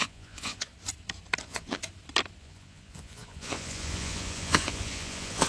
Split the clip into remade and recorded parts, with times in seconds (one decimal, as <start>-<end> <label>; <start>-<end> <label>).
0.0-0.7 remade; 0.7-1.4 recorded; 1.4-1.8 remade; 1.8-2.4 recorded; 2.4-5.5 remade

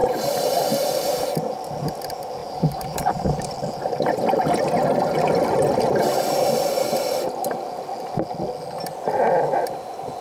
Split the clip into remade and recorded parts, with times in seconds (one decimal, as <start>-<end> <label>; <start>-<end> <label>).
0.0-1.3 remade; 1.3-2.4 recorded; 2.4-3.5 remade; 3.5-10.2 recorded

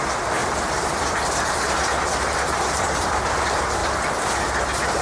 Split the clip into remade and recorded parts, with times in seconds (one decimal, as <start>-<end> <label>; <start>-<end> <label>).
0.0-0.4 recorded; 0.4-3.1 remade; 3.1-3.8 recorded; 3.8-4.5 remade; 4.5-5.0 recorded

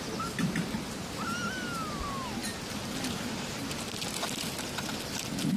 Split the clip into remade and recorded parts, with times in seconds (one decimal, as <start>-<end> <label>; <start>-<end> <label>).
0.0-5.6 recorded

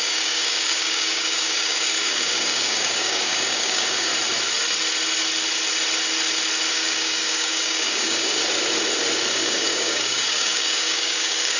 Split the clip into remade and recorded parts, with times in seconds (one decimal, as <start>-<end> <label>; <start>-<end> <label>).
0.0-4.1 remade; 4.1-6.7 recorded; 6.7-8.4 remade; 8.4-9.3 recorded; 9.3-11.6 remade

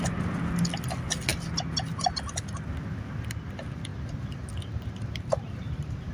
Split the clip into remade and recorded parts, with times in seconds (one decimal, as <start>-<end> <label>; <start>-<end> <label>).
0.0-3.9 recorded; 3.9-6.1 remade

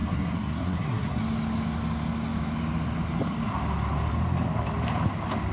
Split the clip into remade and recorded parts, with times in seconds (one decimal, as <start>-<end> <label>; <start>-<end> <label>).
0.0-1.2 remade; 1.2-5.5 recorded